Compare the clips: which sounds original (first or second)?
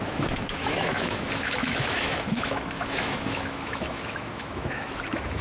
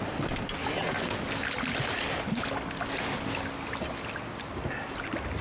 second